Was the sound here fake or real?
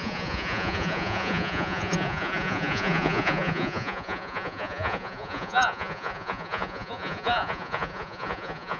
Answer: fake